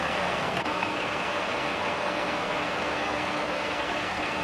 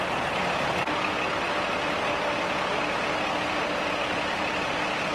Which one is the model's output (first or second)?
first